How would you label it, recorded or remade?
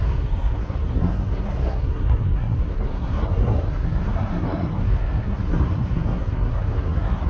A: remade